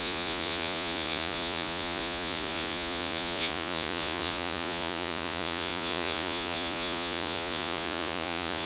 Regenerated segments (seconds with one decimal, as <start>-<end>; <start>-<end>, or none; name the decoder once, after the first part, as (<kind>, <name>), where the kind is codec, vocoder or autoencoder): 0.0-8.7 (vocoder, Vocos)